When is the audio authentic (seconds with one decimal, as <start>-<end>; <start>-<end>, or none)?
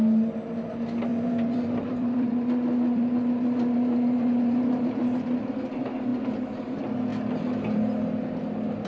0.0-1.1; 5.0-8.9